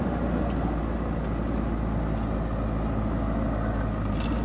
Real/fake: real